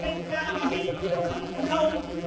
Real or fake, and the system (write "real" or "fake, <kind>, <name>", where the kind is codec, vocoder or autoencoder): fake, vocoder, BigVGAN v2